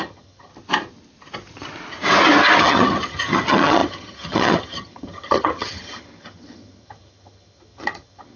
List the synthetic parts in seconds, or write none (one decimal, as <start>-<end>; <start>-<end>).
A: 0.0-0.5; 2.6-8.4